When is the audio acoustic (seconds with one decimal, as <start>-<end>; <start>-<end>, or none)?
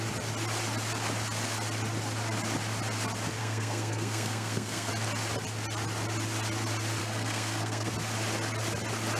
0.0-3.4; 4.9-7.0; 7.9-9.2